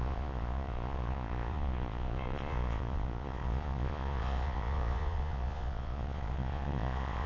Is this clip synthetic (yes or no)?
yes